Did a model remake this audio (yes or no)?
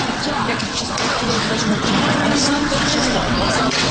yes